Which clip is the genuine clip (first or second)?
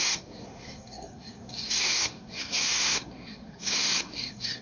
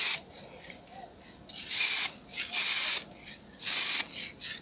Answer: second